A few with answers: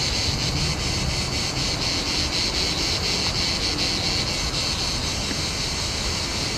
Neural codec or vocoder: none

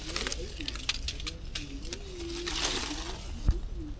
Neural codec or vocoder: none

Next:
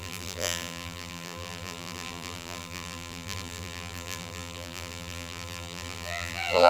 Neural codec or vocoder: vocoder, BigVGAN v2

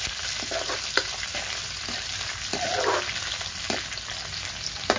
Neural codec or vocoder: none